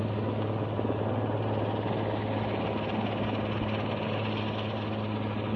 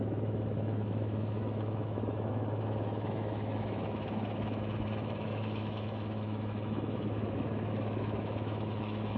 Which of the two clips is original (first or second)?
first